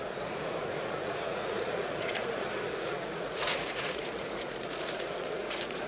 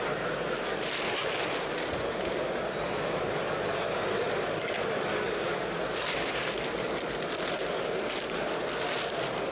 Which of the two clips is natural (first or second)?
second